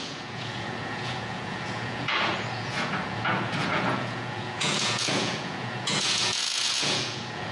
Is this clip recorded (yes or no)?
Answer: no